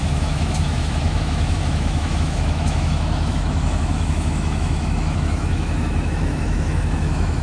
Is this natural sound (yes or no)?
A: no